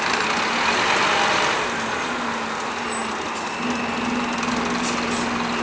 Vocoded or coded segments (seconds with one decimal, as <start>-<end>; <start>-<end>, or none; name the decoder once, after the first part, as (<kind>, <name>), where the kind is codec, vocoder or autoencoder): none